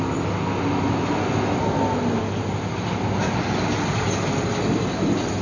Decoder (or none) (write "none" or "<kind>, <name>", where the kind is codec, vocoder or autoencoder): none